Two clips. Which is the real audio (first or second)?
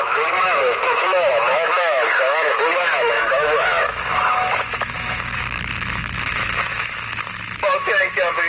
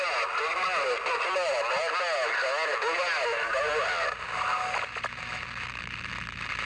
second